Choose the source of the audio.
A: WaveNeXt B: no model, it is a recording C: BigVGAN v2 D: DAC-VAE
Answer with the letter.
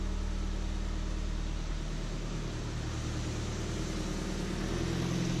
B